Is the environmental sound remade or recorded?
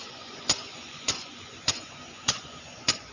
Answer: remade